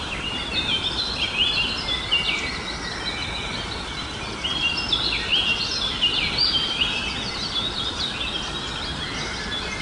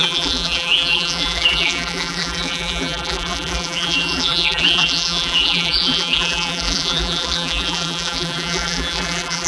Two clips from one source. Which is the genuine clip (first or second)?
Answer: first